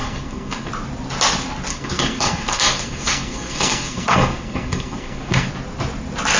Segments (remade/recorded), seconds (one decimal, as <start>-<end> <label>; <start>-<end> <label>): 0.0-0.7 remade; 0.7-1.7 recorded; 1.7-5.5 remade; 5.5-6.4 recorded